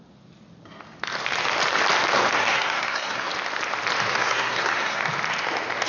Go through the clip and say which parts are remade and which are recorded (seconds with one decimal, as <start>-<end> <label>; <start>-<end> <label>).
0.0-2.4 recorded; 2.4-3.3 remade; 3.3-4.1 recorded; 4.1-5.0 remade; 5.0-5.9 recorded